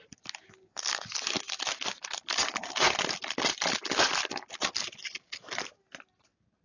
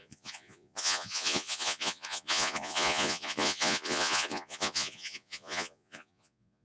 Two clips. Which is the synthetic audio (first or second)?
second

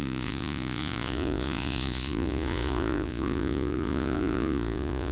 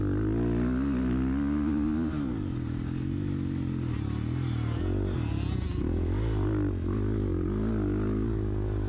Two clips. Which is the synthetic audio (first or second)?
first